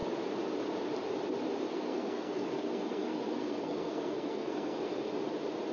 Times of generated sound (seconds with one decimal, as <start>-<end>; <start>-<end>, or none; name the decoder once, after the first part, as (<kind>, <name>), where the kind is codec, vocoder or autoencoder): 1.7-5.1 (codec, SNAC)